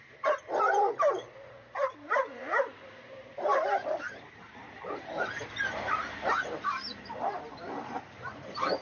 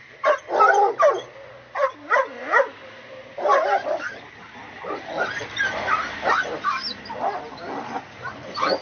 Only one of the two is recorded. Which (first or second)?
second